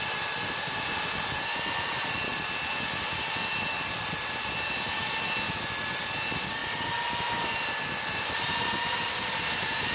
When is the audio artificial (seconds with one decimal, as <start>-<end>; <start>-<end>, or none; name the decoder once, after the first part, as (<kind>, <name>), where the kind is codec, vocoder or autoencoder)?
none